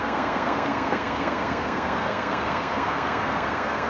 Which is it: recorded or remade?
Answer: remade